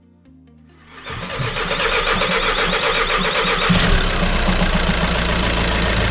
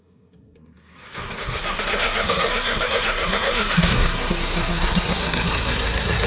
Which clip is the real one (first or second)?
first